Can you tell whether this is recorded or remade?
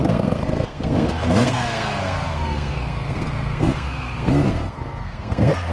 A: remade